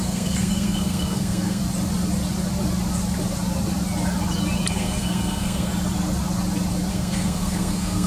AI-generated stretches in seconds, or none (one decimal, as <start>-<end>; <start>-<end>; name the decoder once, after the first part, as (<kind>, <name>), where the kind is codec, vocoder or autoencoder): 0.0-1.6 (codec, SNAC); 4.7-5.7; 6.9-8.1